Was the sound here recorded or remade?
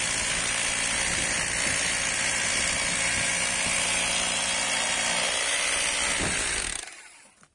recorded